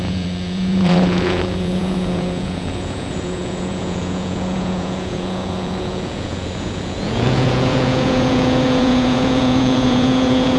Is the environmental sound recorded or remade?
remade